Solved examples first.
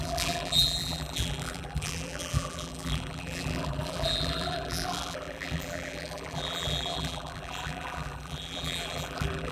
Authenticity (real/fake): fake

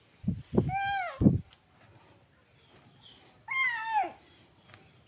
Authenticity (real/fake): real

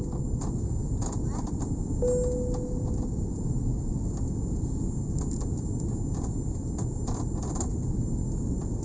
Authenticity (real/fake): real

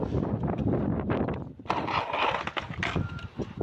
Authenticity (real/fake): real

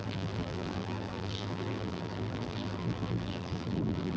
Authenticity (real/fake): fake